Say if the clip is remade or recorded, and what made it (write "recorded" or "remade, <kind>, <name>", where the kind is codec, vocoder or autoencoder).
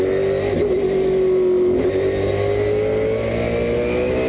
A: recorded